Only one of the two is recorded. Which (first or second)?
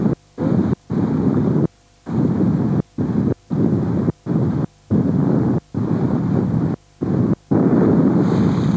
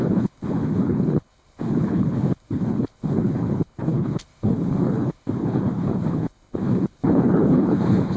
first